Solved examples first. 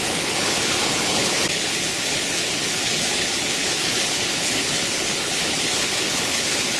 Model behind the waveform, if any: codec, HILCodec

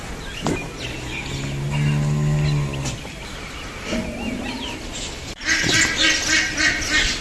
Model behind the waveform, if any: none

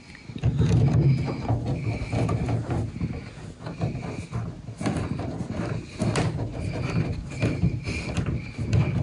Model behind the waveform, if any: none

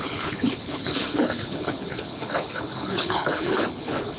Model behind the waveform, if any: codec, HILCodec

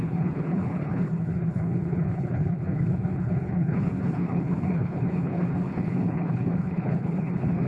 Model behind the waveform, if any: codec, HILCodec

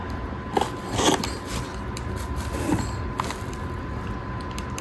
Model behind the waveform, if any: none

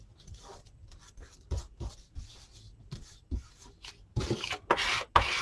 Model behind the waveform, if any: none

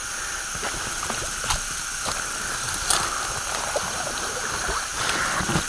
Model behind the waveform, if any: none